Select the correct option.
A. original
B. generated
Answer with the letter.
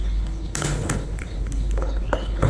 B